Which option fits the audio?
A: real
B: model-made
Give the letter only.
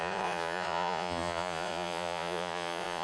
B